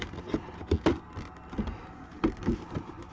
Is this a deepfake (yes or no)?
no